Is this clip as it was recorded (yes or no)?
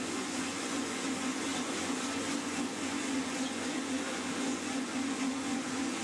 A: no